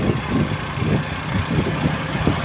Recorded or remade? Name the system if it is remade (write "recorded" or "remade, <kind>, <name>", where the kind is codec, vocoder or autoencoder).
recorded